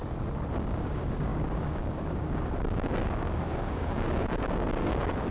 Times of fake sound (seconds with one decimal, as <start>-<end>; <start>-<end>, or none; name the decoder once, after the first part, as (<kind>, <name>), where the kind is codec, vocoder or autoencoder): 0.5-5.3 (codec, DAC)